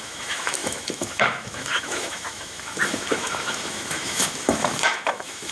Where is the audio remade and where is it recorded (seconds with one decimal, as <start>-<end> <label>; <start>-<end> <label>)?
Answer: 0.0-5.5 remade